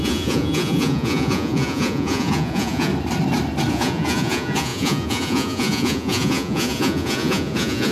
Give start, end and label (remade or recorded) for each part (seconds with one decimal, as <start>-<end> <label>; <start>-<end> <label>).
0.0-2.9 remade; 2.9-3.7 recorded; 3.7-7.9 remade